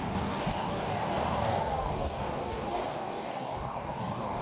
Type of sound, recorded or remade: remade